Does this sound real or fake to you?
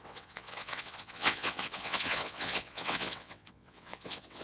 fake